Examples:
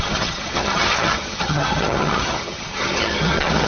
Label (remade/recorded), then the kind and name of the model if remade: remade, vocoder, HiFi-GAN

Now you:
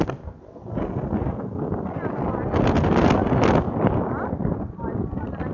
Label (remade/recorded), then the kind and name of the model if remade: recorded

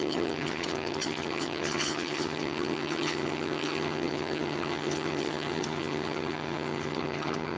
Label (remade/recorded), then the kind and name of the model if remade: remade, vocoder, HiFi-GAN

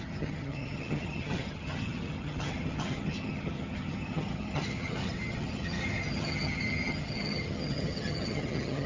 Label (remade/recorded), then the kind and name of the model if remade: remade, vocoder, HiFi-GAN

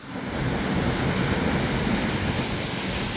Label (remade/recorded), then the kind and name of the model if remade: recorded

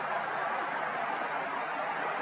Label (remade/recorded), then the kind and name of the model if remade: recorded